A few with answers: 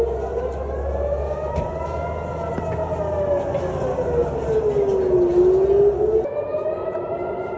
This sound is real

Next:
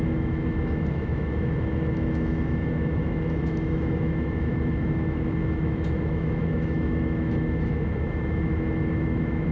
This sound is fake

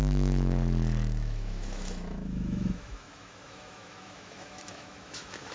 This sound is fake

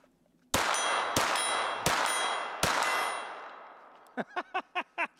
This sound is real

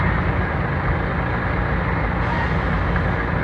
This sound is real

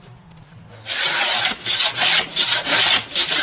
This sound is real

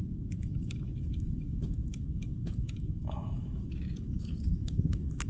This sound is fake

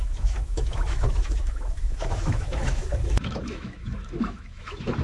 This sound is fake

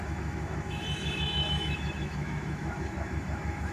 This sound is fake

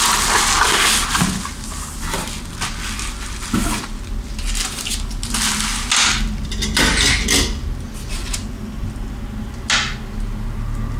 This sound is real